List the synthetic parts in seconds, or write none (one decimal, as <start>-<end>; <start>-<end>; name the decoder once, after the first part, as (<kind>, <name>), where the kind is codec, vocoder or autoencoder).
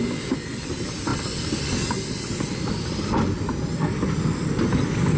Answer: none